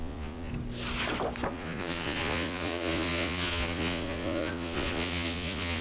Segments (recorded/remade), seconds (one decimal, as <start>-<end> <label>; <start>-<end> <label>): 0.0-0.5 remade; 0.5-1.5 recorded; 1.5-5.8 remade